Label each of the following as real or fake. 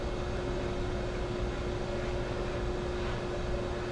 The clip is real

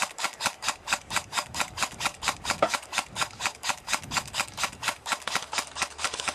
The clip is fake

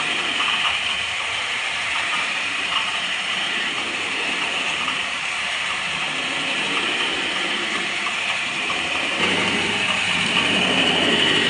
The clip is fake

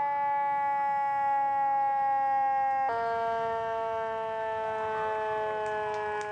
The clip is real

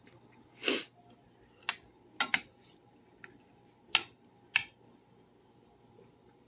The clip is real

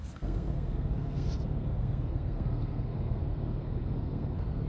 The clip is fake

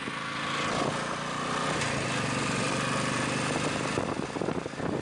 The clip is real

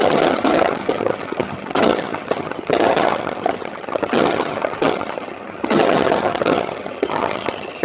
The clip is fake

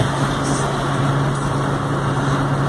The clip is real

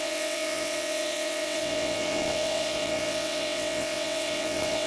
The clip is fake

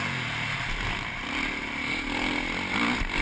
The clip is real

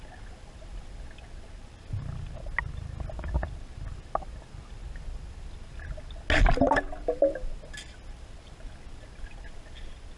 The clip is real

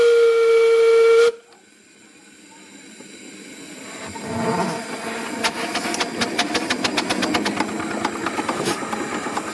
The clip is real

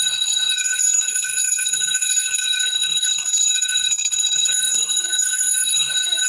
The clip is fake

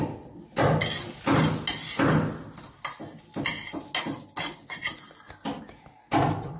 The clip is real